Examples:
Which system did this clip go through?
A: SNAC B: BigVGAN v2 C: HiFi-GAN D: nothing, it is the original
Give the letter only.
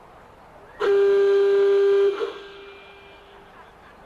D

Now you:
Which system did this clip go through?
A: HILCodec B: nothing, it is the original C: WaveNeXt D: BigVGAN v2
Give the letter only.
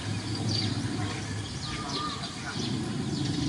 B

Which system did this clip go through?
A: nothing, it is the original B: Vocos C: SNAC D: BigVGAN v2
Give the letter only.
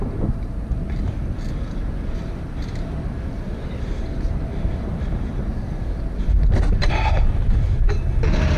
A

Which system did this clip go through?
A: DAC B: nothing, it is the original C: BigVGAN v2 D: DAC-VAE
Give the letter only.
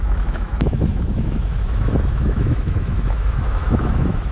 D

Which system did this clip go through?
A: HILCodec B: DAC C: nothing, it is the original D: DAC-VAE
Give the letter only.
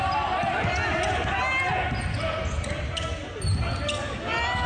C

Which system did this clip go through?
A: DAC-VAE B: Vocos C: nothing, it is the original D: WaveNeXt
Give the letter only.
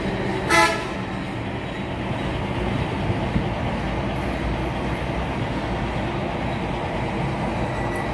C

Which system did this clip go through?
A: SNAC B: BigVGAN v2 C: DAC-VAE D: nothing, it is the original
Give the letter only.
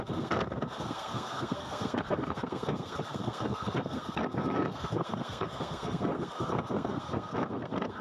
A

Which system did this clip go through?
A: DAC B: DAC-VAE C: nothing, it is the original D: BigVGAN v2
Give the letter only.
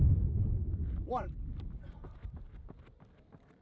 C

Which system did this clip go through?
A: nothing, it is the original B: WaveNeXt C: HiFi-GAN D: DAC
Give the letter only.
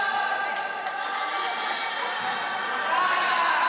A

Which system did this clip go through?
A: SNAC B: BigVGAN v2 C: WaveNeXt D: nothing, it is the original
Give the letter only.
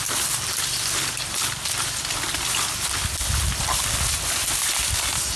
D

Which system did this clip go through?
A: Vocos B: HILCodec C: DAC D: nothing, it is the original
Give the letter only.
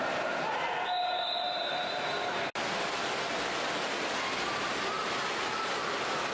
D